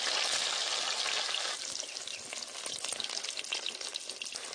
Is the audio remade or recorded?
recorded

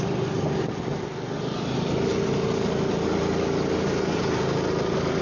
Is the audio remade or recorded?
recorded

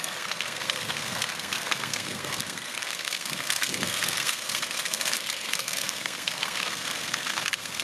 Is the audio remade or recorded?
remade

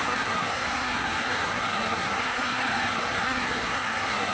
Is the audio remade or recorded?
remade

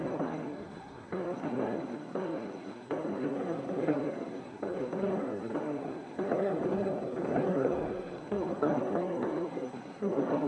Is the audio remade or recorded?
remade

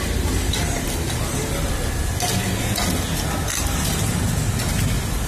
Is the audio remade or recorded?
recorded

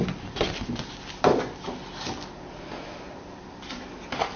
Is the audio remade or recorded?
recorded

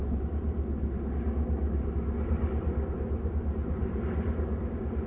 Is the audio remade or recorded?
recorded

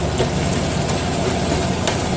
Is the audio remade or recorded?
recorded